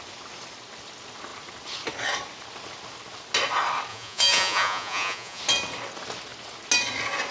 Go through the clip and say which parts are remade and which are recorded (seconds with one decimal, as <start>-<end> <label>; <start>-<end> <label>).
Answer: 0.0-3.9 recorded; 3.9-5.4 remade; 5.4-7.3 recorded